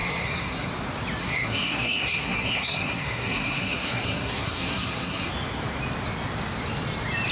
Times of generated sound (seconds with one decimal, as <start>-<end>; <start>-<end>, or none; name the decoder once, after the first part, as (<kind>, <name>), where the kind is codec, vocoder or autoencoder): 0.0-0.7 (codec, SNAC); 1.2-5.3